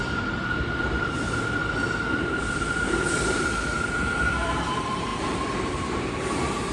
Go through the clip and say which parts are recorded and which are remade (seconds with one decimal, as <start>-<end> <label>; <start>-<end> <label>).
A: 0.0-1.6 remade; 1.6-2.2 recorded; 2.2-6.7 remade